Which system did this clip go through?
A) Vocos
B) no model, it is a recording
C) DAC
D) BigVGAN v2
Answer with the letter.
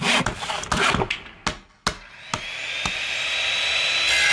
B